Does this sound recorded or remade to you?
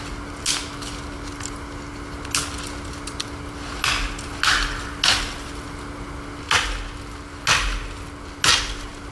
recorded